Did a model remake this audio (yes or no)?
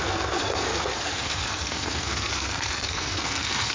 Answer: yes